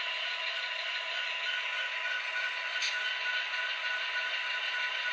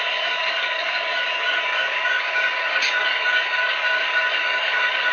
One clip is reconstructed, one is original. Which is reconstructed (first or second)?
second